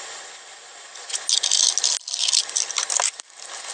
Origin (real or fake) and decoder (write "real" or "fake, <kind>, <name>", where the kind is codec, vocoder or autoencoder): real